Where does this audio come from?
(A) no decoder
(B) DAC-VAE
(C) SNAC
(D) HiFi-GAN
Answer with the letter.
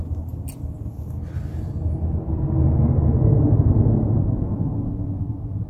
A